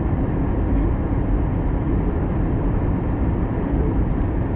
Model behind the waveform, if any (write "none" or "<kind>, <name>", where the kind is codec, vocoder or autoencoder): vocoder, BigVGAN v2